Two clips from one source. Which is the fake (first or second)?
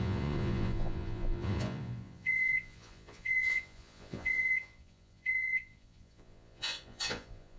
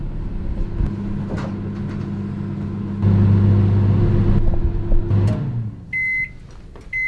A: first